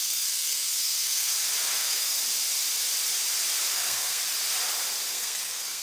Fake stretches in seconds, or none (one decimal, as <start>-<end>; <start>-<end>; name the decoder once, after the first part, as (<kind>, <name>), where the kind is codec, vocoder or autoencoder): 0.0-1.3 (codec, SNAC); 1.8-2.2; 3.7-4.2; 5.1-5.8